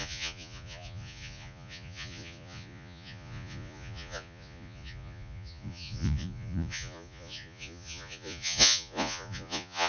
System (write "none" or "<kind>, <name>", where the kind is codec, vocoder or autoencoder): vocoder, Vocos